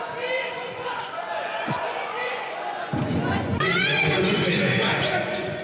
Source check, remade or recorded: remade